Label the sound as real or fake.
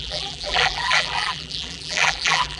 fake